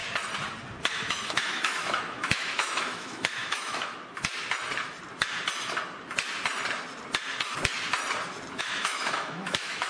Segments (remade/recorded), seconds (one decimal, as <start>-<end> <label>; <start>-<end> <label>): 0.0-0.9 recorded; 0.9-3.9 remade; 3.9-8.6 recorded; 8.6-9.9 remade